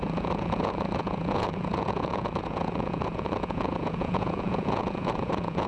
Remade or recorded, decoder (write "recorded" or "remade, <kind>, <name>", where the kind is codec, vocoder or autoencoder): remade, vocoder, Vocos